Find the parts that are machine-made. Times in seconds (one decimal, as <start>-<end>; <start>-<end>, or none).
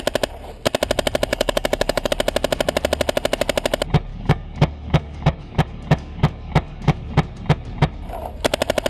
1.3-2.1; 4.1-7.1